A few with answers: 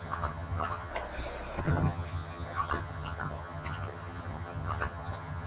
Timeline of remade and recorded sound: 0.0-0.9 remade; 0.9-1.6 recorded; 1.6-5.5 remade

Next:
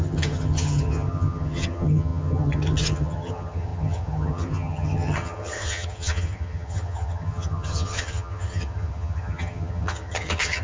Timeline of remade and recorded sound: 0.0-10.6 remade

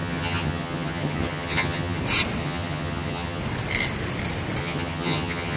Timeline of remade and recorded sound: 0.0-2.0 remade; 2.0-2.4 recorded; 2.4-3.4 remade; 3.4-4.6 recorded; 4.6-5.6 remade

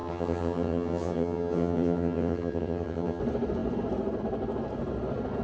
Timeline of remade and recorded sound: 0.0-3.2 remade; 3.2-5.4 recorded

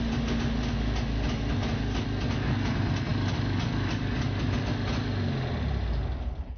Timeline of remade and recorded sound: 0.0-6.6 recorded